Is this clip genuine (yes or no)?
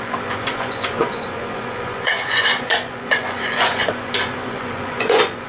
no